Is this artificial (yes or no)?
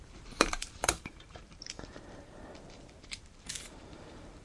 yes